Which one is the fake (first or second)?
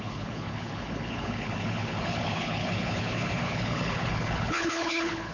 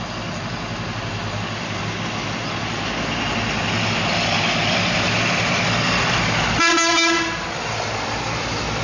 first